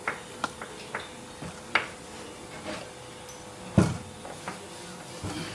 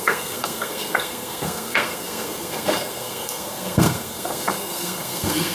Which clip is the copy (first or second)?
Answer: second